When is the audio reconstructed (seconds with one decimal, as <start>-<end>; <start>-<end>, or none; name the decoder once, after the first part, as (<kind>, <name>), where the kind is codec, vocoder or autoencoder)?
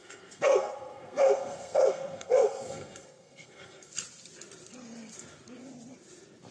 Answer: 0.0-3.9 (codec, SNAC)